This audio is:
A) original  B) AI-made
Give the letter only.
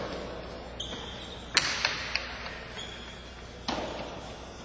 A